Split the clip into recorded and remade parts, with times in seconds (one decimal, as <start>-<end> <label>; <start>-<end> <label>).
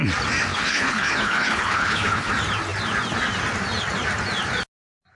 0.0-0.5 recorded; 0.5-2.3 remade; 2.3-5.1 recorded